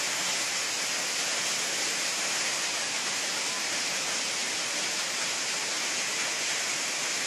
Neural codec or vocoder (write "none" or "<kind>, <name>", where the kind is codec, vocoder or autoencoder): none